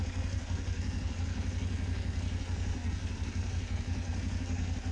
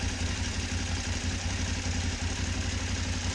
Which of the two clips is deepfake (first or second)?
first